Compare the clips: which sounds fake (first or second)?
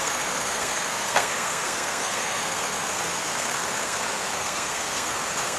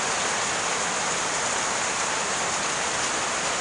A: first